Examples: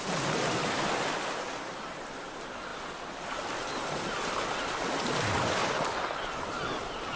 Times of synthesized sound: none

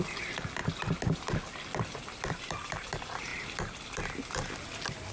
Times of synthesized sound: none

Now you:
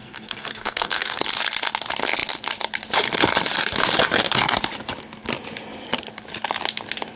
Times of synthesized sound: 0.0-1.2